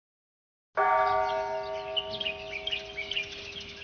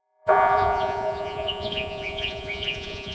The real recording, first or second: first